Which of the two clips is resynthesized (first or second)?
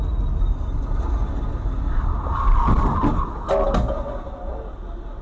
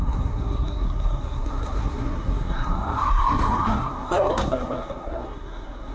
second